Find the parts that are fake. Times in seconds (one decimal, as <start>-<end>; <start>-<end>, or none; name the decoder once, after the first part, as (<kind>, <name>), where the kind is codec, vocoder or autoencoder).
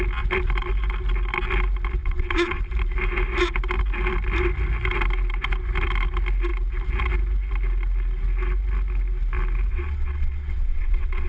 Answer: 2.0-2.6 (vocoder, WaveNeXt); 9.7-11.3